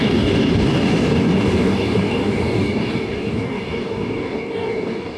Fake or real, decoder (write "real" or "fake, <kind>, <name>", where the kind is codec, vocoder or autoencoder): fake, codec, DAC